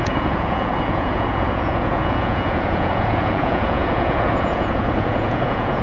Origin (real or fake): fake